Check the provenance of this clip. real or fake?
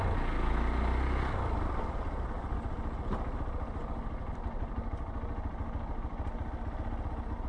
real